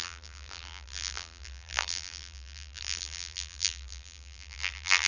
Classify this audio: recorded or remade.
remade